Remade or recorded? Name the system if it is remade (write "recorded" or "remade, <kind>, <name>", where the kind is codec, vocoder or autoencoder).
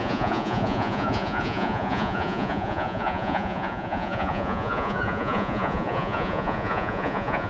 remade, vocoder, Vocos